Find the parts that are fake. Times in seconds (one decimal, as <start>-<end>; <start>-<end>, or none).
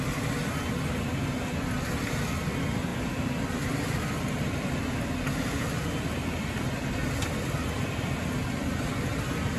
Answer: 2.9-5.0; 7.0-7.8